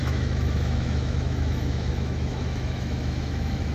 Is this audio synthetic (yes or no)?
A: yes